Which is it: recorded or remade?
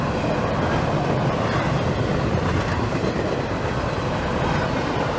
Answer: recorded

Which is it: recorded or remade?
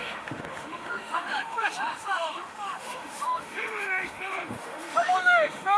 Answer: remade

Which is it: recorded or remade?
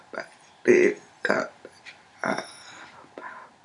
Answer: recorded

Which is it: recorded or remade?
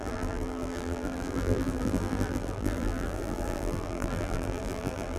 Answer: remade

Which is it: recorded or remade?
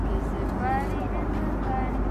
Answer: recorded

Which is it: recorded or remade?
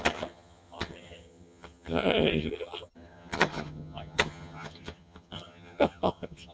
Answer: remade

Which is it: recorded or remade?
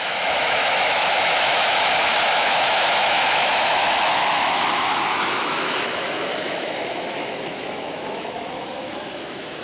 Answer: remade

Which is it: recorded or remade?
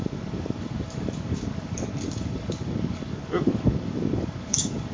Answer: remade